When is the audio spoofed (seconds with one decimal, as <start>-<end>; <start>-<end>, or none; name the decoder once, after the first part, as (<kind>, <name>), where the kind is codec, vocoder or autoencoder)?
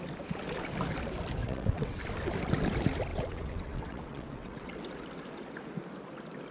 1.4-2.0 (vocoder, WaveNeXt); 3.1-4.7